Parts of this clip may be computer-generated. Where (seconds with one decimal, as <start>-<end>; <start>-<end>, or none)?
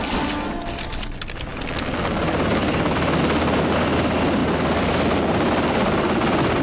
none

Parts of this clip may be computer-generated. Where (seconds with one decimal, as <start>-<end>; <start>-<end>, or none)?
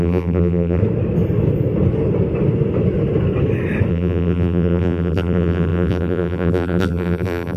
0.0-0.8; 3.9-7.6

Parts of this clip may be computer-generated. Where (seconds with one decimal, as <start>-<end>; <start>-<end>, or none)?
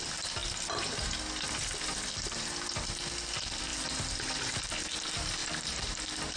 5.4-6.0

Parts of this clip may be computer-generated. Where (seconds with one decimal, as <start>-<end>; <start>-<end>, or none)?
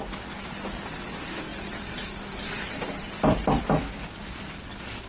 1.5-3.6